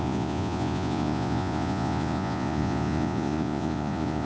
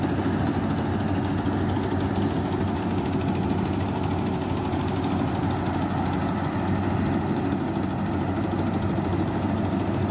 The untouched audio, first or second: second